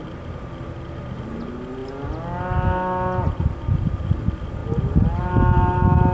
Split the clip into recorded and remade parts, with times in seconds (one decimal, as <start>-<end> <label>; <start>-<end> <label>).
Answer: 0.0-6.1 recorded